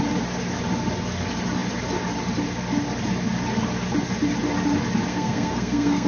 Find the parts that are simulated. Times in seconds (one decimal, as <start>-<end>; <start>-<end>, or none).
5.1-6.1